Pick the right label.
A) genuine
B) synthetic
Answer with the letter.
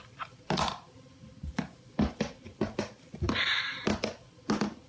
A